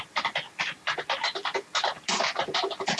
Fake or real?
real